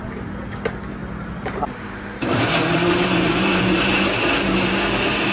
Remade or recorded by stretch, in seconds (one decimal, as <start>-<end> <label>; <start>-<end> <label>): 0.0-1.0 recorded; 1.0-4.2 remade; 4.2-5.3 recorded